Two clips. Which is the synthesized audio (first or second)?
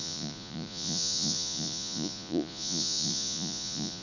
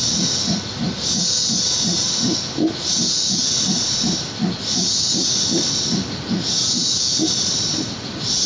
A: first